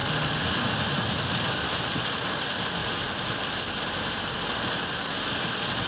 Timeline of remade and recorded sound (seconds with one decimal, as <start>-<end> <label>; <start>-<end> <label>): 0.0-5.9 recorded